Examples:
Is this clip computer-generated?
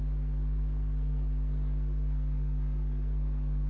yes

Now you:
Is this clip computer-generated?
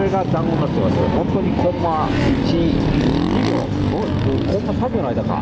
no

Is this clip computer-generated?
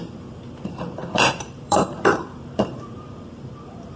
yes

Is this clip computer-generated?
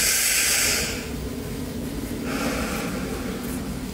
no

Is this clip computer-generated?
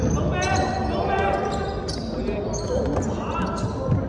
no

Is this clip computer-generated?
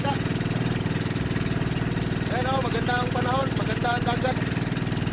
no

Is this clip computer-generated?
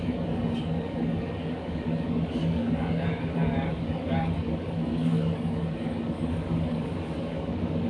yes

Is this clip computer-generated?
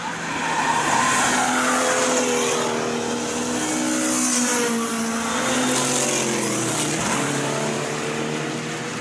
no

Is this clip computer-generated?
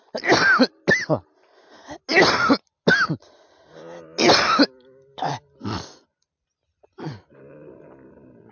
no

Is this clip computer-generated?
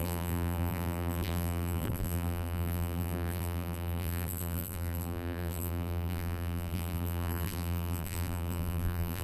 yes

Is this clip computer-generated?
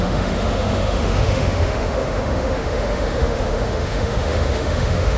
yes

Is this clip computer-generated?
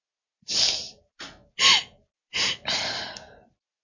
no